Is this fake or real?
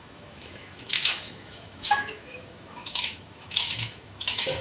fake